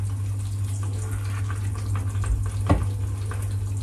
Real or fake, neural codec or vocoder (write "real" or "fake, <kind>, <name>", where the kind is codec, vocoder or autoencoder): real